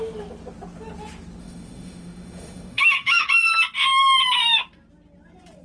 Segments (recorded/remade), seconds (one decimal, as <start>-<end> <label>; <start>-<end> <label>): 0.0-1.4 recorded; 1.4-3.3 remade; 3.3-5.6 recorded

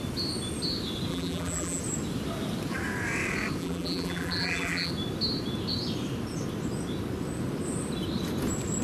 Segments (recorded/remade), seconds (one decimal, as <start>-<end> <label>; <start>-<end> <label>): 0.0-1.1 recorded; 1.1-1.8 remade; 1.8-3.6 recorded; 3.6-4.9 remade; 4.9-8.8 recorded

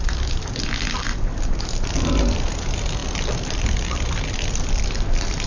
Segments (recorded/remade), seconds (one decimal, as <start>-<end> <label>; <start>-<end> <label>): 0.0-3.0 recorded; 3.0-4.7 remade; 4.7-5.5 recorded

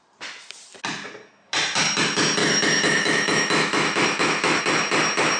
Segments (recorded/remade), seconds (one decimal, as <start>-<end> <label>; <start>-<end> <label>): 0.0-2.4 recorded; 2.4-4.6 remade; 4.6-5.4 recorded